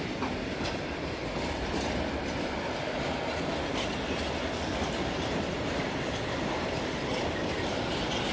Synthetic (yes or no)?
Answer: no